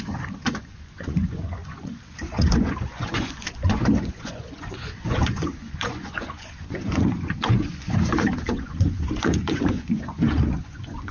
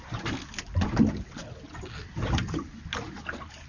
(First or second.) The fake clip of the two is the first